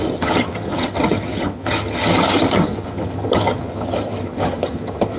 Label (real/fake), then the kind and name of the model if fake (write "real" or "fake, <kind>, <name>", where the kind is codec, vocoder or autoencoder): fake, vocoder, HiFi-GAN